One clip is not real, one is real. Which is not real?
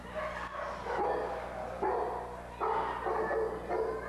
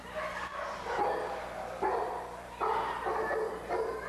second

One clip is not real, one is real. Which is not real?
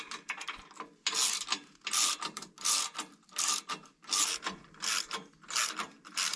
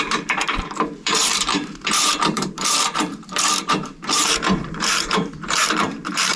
second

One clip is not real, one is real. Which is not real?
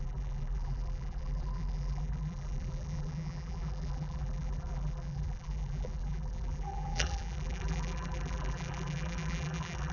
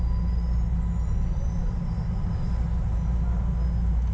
first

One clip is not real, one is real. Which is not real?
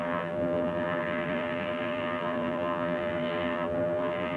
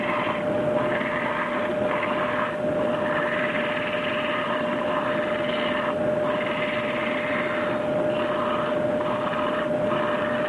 first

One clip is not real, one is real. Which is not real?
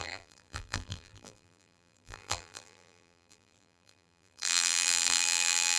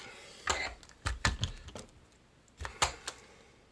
first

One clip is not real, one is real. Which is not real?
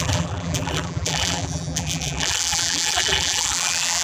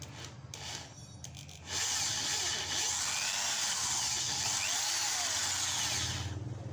first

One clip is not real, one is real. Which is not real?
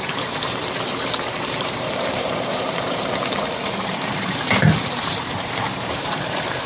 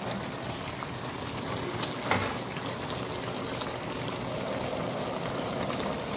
first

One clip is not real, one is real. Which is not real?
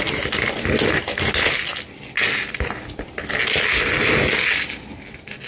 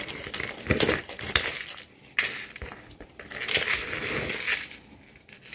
second